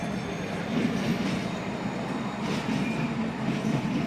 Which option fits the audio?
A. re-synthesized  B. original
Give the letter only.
A